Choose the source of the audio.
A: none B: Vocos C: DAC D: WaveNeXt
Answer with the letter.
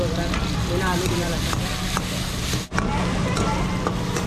A